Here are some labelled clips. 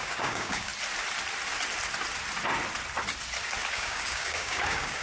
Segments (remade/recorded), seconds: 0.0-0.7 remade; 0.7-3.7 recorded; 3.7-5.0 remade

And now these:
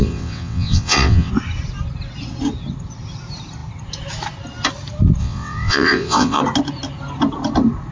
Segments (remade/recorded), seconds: 0.0-1.3 remade; 1.3-5.2 recorded; 5.2-6.4 remade; 6.4-7.9 recorded

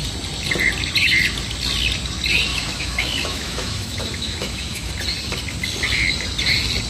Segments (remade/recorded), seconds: 0.0-2.5 recorded; 2.5-4.9 remade; 4.9-6.9 recorded

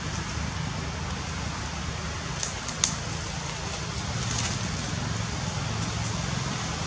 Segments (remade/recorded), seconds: 0.0-6.9 recorded

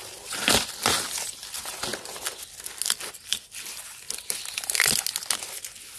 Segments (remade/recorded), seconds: 0.0-6.0 recorded

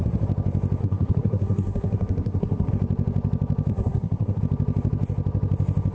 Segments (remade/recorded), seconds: 0.0-0.8 recorded; 0.8-2.7 remade; 2.7-3.7 recorded; 3.7-4.4 remade; 4.4-5.9 recorded

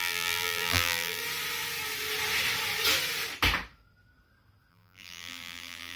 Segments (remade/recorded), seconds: 0.0-1.2 remade; 1.2-4.7 recorded; 4.7-6.0 remade